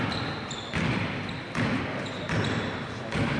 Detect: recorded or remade recorded